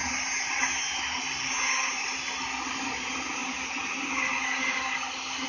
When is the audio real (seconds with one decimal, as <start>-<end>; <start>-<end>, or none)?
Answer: 0.0-5.5